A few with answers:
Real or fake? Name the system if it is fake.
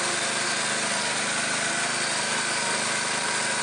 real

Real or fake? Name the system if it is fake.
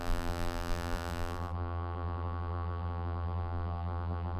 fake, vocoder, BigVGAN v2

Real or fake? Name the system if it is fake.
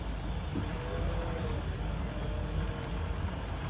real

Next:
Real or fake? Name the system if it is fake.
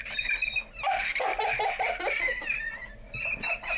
real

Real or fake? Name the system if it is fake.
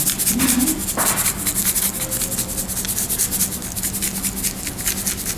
real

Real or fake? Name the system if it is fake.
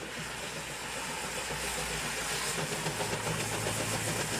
real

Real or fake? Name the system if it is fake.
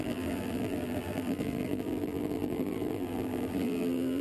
fake, vocoder, BigVGAN v2